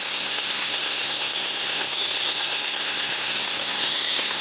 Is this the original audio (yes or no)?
no